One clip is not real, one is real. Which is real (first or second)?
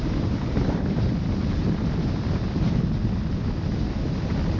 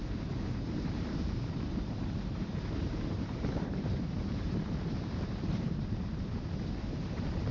first